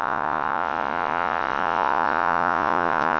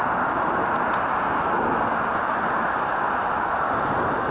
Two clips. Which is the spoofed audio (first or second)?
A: first